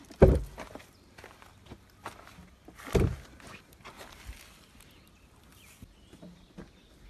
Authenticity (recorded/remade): recorded